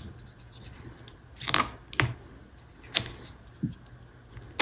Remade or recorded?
recorded